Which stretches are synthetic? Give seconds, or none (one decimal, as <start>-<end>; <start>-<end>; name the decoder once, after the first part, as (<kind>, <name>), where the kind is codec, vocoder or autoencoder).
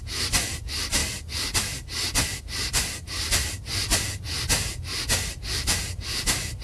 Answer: none